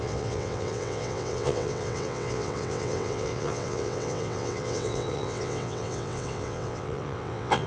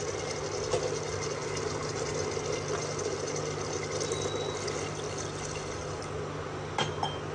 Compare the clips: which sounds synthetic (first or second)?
first